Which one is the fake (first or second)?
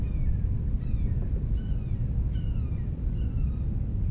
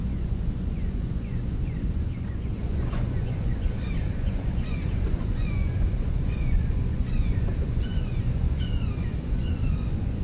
second